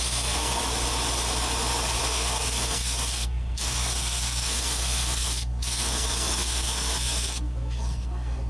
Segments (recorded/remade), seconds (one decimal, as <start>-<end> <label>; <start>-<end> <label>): 0.0-0.6 remade; 0.6-2.0 recorded; 2.0-8.5 remade